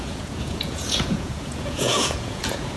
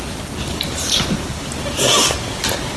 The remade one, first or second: first